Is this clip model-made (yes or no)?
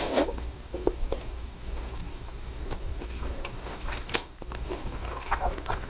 yes